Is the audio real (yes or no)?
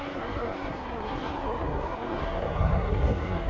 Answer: no